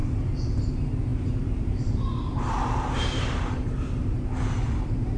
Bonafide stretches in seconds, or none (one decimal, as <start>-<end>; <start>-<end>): 0.0-1.1; 4.2-5.2